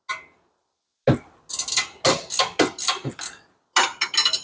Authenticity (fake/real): real